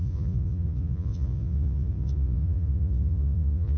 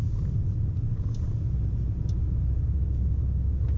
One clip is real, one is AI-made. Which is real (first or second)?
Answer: second